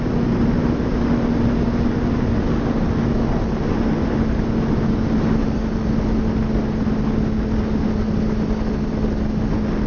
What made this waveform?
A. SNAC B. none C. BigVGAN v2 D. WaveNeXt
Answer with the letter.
B